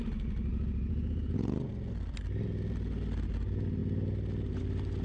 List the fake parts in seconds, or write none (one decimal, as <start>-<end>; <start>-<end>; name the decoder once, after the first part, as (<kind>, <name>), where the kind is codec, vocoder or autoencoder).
0.5-1.7 (vocoder, Vocos)

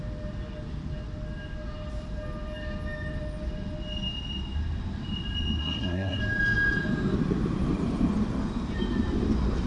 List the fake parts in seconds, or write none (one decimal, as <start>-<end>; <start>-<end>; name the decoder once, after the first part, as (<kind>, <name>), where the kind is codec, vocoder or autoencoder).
5.6-6.2 (codec, SNAC)